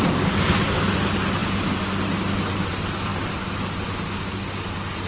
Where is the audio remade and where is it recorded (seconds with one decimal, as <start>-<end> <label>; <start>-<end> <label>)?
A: 0.0-5.1 recorded

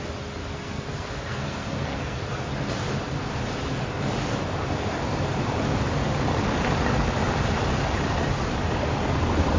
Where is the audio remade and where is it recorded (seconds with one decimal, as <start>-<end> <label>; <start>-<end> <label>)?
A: 0.0-0.4 recorded; 0.4-2.2 remade; 2.2-9.6 recorded